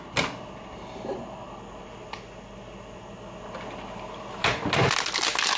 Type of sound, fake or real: real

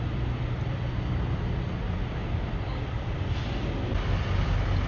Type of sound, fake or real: real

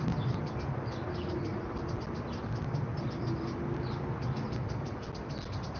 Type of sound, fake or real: real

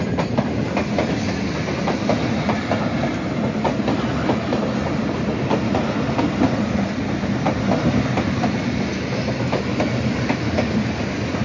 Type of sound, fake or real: real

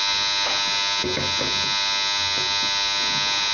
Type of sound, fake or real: real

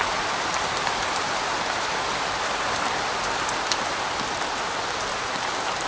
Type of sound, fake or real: real